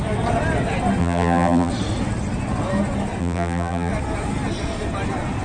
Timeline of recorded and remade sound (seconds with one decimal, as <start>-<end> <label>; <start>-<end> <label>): 0.0-1.0 recorded; 1.0-1.7 remade; 1.7-3.2 recorded; 3.2-3.9 remade; 3.9-5.4 recorded

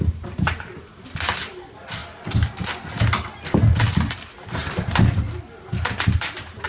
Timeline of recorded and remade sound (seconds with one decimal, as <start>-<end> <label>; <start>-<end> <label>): 0.0-2.0 recorded; 2.0-2.5 remade; 2.5-4.6 recorded; 4.6-5.3 remade; 5.3-6.7 recorded

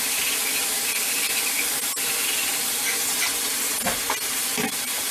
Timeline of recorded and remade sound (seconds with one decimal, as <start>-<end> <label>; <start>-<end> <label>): 0.0-0.5 recorded; 0.5-1.6 remade; 1.6-5.1 recorded

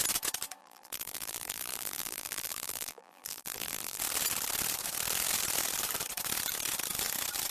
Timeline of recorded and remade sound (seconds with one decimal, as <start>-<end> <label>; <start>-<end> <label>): 0.0-0.6 recorded; 0.6-4.0 remade; 4.0-7.5 recorded

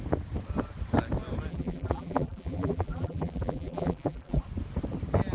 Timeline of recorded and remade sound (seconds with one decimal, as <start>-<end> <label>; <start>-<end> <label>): 0.0-1.5 recorded; 1.5-4.4 remade; 4.4-5.3 recorded

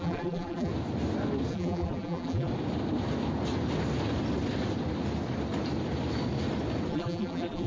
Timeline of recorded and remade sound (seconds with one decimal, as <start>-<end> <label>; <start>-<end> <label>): 0.0-0.7 remade; 0.7-1.5 recorded; 1.5-2.5 remade; 2.5-6.9 recorded; 6.9-7.7 remade